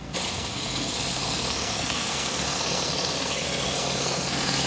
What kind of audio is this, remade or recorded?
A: remade